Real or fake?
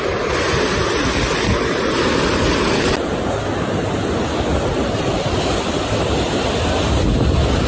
real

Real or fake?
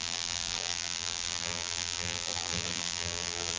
fake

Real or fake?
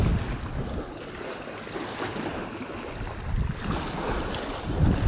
real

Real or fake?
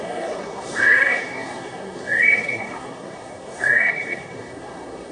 fake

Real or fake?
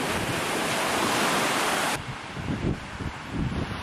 real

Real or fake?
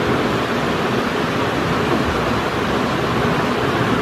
real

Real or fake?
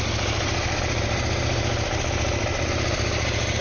real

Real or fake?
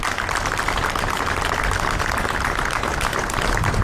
real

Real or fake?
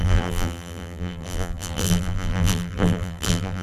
fake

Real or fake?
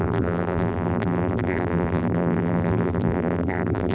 fake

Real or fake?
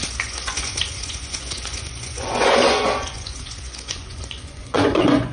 fake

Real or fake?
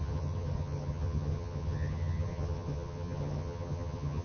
fake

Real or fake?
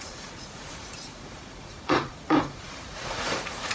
fake